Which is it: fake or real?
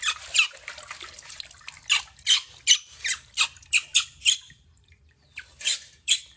real